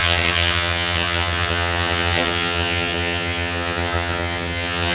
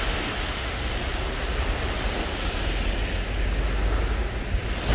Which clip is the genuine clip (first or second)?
second